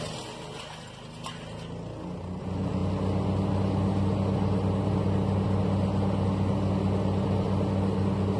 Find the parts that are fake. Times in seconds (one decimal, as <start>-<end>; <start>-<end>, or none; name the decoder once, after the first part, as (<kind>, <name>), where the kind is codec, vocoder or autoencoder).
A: none